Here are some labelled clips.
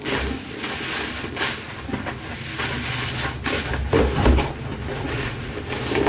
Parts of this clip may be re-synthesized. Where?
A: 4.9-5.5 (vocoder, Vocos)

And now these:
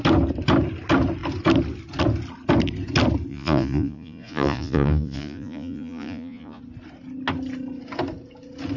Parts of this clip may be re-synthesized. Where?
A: 3.3-6.6 (vocoder, Vocos)